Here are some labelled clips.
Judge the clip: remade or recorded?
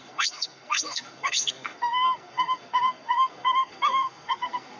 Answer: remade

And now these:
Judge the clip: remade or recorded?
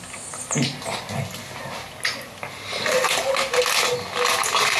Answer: recorded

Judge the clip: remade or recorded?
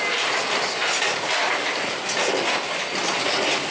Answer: recorded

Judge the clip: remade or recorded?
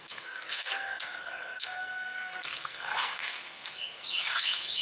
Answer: remade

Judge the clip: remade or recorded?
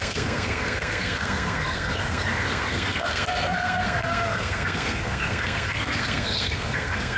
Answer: remade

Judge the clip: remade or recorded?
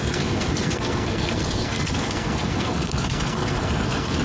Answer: remade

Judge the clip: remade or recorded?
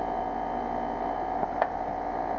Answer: recorded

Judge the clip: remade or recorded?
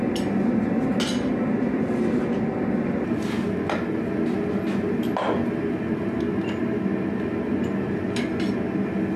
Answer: recorded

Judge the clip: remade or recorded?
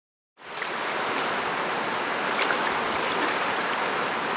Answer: recorded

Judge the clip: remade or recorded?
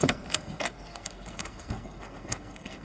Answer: remade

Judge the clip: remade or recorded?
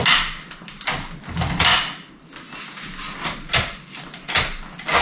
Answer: recorded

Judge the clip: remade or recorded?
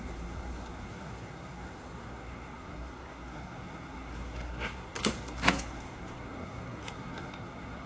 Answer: remade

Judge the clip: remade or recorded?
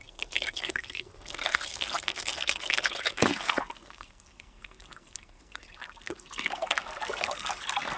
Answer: remade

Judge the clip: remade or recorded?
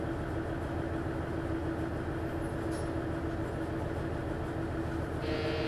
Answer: recorded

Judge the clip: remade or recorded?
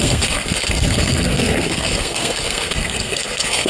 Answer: remade